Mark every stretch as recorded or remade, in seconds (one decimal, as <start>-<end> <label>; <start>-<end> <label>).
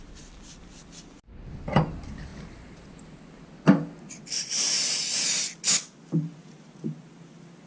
0.0-7.7 recorded